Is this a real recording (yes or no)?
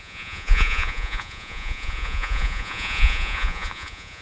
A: no